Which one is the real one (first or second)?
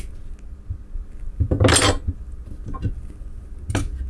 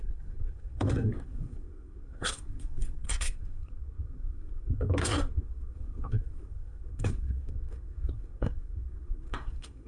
first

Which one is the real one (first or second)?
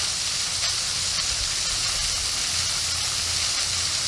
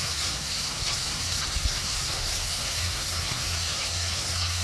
first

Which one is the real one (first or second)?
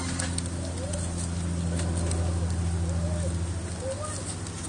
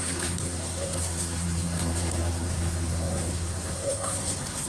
first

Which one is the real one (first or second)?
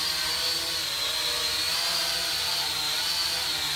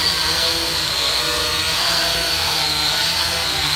first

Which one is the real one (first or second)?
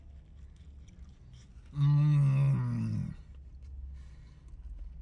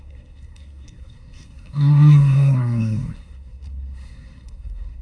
first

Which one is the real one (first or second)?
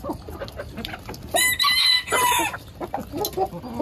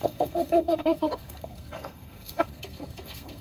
first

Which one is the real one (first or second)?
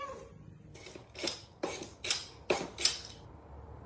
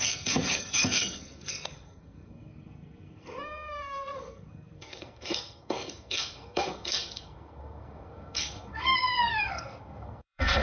first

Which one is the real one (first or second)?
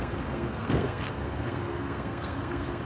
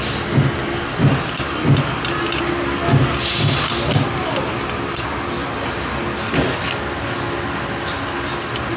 second